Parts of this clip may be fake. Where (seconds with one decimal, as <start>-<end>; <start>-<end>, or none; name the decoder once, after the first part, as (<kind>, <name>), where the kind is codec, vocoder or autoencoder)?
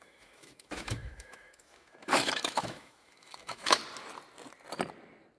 0.0-3.8 (autoencoder, DAC-VAE)